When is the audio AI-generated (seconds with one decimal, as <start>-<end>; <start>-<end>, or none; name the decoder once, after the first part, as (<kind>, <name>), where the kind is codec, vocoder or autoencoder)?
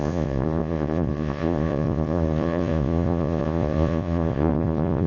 0.0-5.1 (vocoder, Vocos)